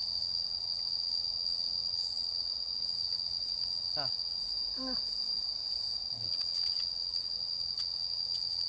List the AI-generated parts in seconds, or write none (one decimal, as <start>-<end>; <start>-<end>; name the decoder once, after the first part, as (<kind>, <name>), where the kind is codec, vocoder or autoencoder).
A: 0.0-4.4 (vocoder, WaveNeXt); 6.0-8.7